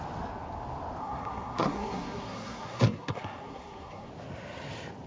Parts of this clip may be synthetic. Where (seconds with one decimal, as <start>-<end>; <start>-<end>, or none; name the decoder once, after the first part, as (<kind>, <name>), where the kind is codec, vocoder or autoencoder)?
1.0-4.1 (codec, SNAC)